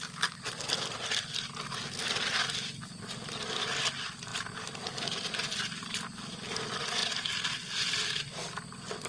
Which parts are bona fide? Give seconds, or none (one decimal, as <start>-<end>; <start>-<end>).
0.0-9.1